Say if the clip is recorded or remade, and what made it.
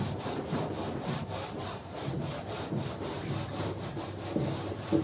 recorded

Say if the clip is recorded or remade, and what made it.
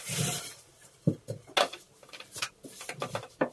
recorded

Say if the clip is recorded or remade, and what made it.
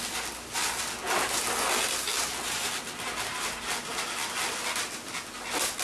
recorded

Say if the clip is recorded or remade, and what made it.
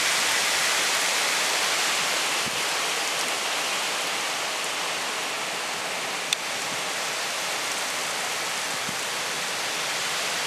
recorded